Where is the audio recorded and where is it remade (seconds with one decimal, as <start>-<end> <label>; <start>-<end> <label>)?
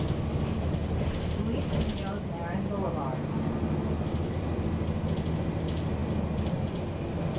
0.0-0.8 recorded; 0.8-1.4 remade; 1.4-7.4 recorded